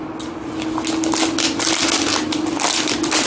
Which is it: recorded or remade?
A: recorded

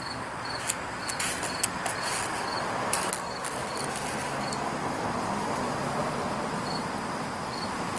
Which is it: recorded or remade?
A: recorded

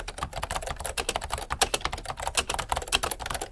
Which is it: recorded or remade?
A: recorded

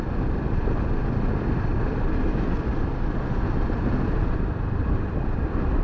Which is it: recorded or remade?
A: recorded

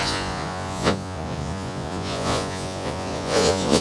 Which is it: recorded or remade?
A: remade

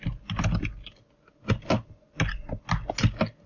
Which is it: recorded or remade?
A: recorded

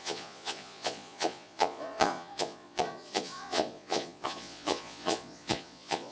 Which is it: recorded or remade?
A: remade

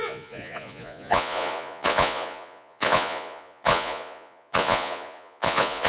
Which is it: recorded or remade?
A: remade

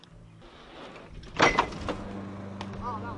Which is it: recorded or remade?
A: recorded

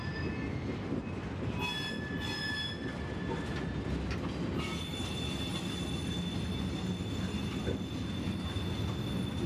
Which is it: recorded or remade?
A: recorded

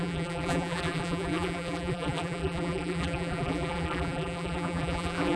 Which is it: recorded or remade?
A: remade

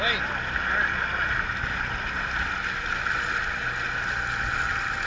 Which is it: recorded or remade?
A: recorded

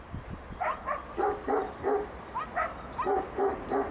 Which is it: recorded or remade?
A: recorded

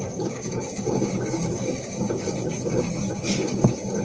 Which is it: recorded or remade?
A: remade